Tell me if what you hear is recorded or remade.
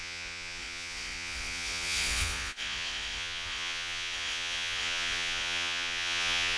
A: remade